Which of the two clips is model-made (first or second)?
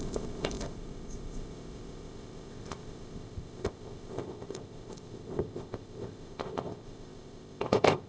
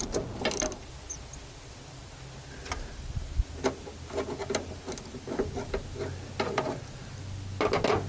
first